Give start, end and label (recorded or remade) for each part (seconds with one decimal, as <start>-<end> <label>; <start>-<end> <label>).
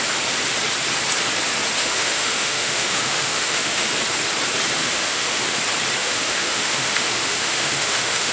0.0-1.8 recorded; 1.8-3.9 remade; 3.9-4.8 recorded; 4.8-5.6 remade; 5.6-6.0 recorded; 6.0-8.3 remade